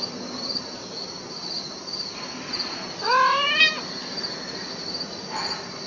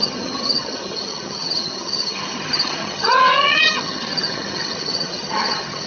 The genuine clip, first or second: first